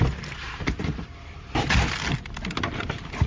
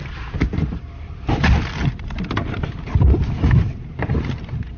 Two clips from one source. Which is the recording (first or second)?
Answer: first